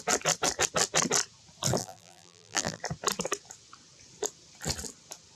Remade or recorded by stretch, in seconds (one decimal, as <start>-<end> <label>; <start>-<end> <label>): 0.0-1.8 recorded; 1.8-2.8 remade; 2.8-5.4 recorded